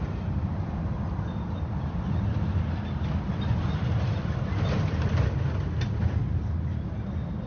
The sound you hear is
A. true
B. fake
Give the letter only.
A